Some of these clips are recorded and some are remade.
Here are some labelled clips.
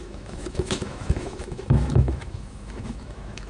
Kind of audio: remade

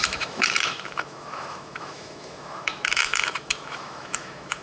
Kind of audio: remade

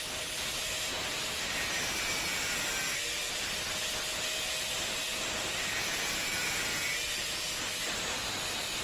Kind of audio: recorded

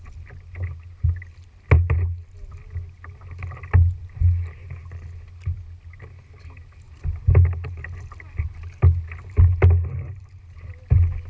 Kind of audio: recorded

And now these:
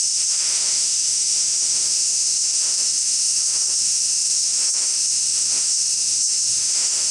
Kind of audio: remade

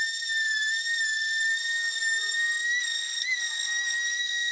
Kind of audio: recorded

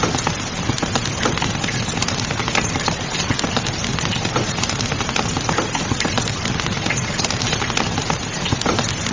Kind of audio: recorded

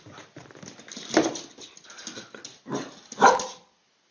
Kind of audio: recorded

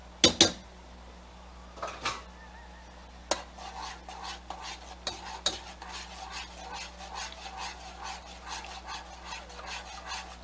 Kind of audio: recorded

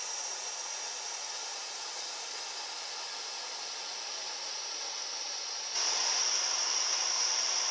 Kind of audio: recorded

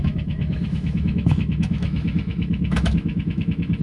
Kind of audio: remade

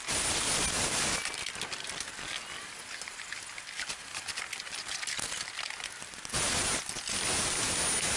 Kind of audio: recorded